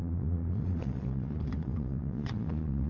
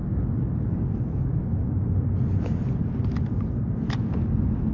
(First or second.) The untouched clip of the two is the second